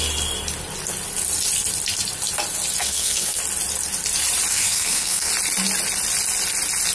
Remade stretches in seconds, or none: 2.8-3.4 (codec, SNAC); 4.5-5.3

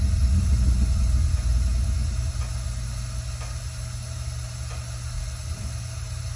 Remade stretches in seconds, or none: none

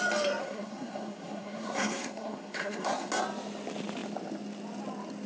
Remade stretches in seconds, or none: 0.4-3.1 (codec, SNAC)